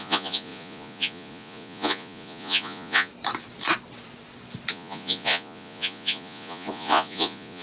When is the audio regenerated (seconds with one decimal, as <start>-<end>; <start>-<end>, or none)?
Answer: 0.0-3.1; 4.7-7.6